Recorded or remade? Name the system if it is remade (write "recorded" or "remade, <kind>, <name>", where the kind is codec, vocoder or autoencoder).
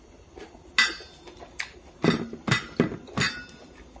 recorded